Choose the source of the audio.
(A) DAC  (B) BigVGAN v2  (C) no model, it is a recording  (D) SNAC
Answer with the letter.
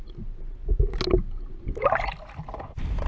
C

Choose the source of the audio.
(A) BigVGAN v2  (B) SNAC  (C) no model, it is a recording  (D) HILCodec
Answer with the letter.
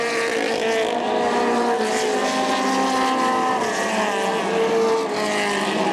C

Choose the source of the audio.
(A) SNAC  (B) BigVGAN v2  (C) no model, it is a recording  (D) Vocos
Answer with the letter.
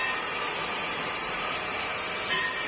B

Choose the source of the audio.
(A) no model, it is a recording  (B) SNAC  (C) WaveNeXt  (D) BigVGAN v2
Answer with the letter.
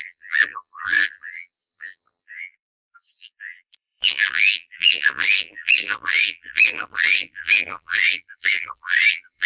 D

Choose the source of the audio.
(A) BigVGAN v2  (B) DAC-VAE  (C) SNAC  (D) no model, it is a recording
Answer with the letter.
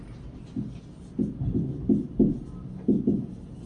D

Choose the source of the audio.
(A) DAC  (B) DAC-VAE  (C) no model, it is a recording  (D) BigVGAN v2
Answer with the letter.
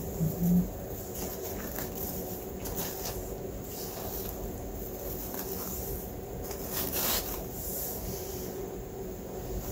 C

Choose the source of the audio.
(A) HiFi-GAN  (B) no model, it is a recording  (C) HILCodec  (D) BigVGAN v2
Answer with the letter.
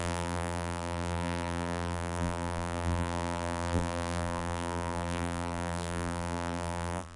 D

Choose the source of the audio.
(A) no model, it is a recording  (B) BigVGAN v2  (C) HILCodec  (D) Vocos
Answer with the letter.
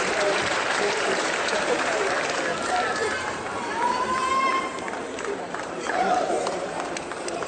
B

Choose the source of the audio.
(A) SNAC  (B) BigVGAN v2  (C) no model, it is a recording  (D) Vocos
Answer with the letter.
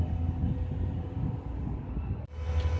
C